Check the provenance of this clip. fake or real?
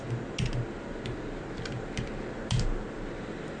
real